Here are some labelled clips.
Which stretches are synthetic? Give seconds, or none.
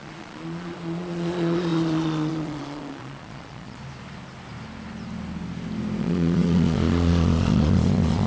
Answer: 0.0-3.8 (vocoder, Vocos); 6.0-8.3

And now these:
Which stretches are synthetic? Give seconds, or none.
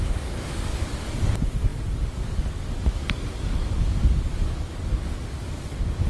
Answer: 0.0-6.1 (codec, DAC)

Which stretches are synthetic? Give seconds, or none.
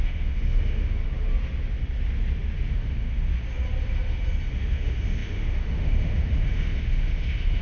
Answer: 0.0-1.0 (autoencoder, DAC-VAE); 2.7-3.3; 4.5-7.6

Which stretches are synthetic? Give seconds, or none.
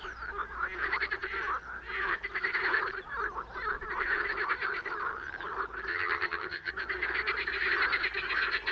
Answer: 5.9-6.7 (vocoder, HiFi-GAN)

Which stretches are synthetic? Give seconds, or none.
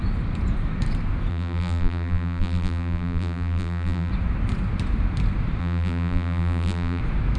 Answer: 1.3-4.1 (vocoder, BigVGAN v2); 5.6-7.0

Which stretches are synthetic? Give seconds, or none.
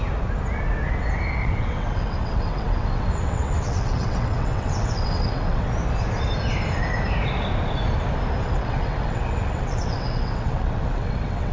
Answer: 1.4-5.7 (vocoder, WaveNeXt); 8.4-11.5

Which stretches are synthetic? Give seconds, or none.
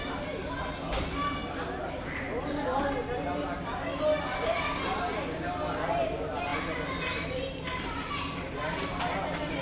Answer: none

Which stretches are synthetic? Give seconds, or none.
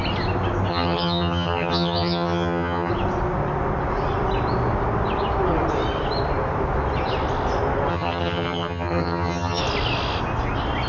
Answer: 0.7-2.9 (vocoder, HiFi-GAN); 7.9-9.6